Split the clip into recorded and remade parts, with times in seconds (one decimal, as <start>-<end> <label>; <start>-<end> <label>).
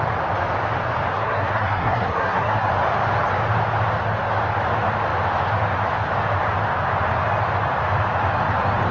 0.0-1.1 recorded; 1.1-2.7 remade; 2.7-8.9 recorded